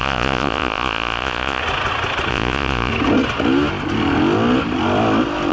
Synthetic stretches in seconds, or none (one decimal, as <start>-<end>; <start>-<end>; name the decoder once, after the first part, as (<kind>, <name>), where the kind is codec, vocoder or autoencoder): 0.0-1.6 (vocoder, Vocos); 2.3-2.9